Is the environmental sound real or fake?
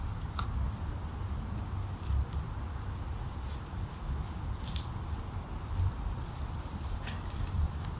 real